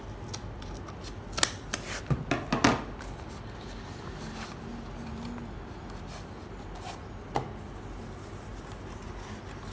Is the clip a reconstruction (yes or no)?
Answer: no